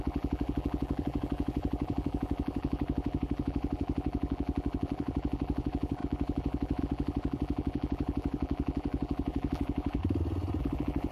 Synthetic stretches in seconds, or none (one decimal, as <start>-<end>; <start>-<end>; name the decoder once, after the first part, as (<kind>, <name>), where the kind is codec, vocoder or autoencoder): 0.0-10.0 (vocoder, BigVGAN v2); 10.6-11.1